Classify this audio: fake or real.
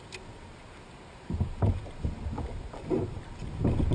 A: real